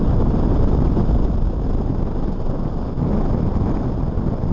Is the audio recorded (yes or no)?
yes